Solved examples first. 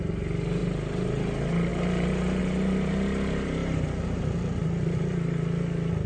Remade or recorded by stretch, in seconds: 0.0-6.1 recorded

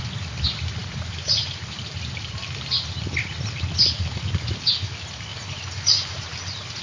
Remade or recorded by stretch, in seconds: 0.0-0.8 recorded; 0.8-2.4 remade; 2.4-5.3 recorded; 5.3-6.8 remade

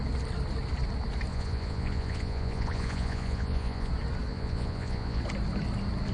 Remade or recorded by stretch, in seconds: 0.0-1.3 recorded; 1.3-3.9 remade; 3.9-4.3 recorded; 4.3-5.2 remade; 5.2-6.1 recorded

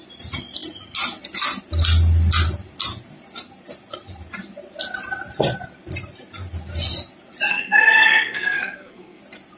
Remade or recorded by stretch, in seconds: 0.0-7.5 recorded; 7.5-9.2 remade; 9.2-9.6 recorded

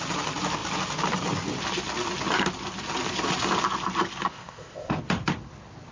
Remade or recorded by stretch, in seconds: 0.0-4.3 recorded; 4.3-5.0 remade; 5.0-5.9 recorded

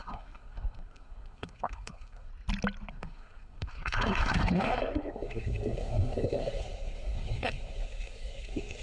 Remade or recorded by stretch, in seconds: 0.0-2.3 remade; 2.3-2.9 recorded; 2.9-8.8 remade

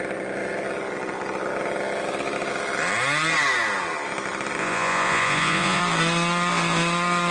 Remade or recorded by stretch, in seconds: 0.0-4.6 recorded; 4.6-5.8 remade; 5.8-7.3 recorded